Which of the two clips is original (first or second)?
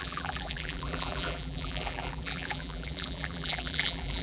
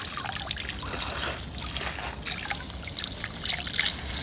second